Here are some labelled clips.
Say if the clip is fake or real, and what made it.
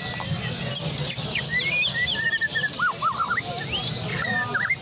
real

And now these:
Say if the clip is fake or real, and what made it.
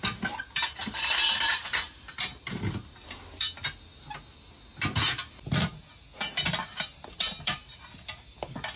real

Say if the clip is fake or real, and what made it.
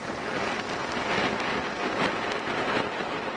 real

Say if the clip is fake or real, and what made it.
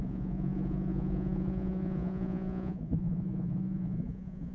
fake, vocoder, Vocos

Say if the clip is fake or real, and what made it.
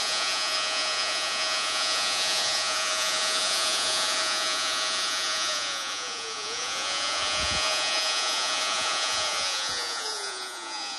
fake, vocoder, Vocos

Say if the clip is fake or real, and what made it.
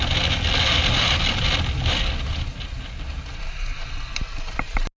real